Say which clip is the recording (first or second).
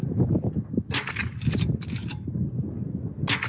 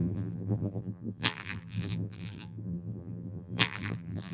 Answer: first